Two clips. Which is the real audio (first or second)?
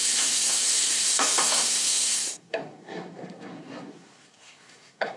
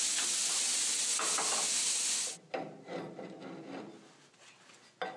second